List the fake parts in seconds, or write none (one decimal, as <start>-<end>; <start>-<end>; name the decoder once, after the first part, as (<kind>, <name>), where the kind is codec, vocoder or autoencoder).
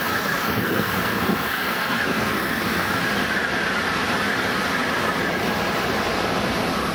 0.0-3.0 (codec, SNAC)